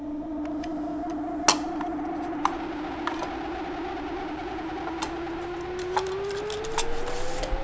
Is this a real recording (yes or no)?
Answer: yes